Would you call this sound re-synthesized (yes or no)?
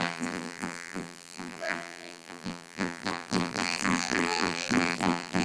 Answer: yes